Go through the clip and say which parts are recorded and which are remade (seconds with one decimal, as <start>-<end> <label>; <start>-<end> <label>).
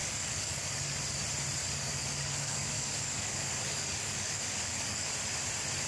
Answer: 0.0-1.0 remade; 1.0-1.6 recorded; 1.6-5.1 remade; 5.1-5.9 recorded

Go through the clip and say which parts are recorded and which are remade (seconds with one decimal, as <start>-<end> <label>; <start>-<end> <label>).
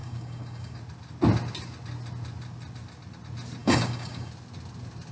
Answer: 0.0-0.8 remade; 0.8-3.6 recorded; 3.6-4.3 remade; 4.3-5.1 recorded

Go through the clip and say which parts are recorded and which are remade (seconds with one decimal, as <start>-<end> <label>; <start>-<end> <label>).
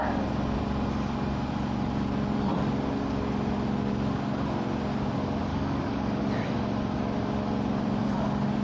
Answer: 0.0-5.5 recorded; 5.5-6.2 remade; 6.2-8.6 recorded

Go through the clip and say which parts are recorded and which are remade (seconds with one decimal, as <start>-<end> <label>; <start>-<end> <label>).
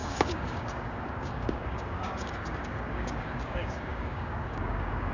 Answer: 0.0-5.1 remade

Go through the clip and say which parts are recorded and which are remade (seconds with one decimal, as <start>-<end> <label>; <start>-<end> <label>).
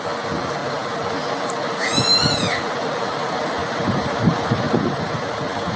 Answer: 0.0-5.8 recorded